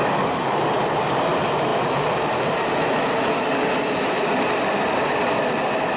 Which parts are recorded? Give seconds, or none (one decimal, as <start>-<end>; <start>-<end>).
0.6-6.0